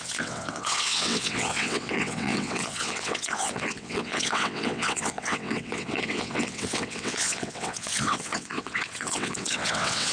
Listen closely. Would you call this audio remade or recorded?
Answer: remade